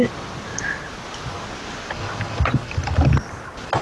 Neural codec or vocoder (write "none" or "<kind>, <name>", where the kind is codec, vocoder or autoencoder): none